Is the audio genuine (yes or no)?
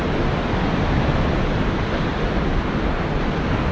yes